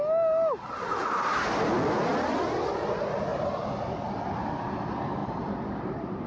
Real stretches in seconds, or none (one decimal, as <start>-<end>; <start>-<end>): 0.0-3.3; 4.2-5.2